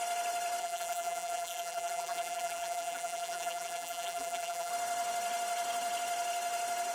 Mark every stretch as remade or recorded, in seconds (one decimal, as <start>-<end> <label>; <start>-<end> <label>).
0.0-0.6 recorded; 0.6-4.7 remade; 4.7-6.9 recorded